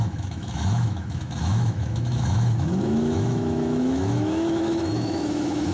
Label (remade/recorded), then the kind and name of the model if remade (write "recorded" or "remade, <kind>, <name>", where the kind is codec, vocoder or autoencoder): remade, autoencoder, DAC-VAE